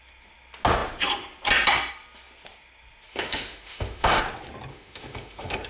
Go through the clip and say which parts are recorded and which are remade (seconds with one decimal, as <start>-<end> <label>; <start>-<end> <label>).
0.0-3.1 recorded; 3.1-4.2 remade; 4.2-4.7 recorded; 4.7-5.7 remade